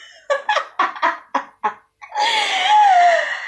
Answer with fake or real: real